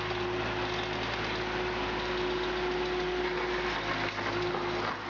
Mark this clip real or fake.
real